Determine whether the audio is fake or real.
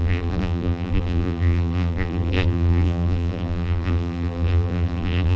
fake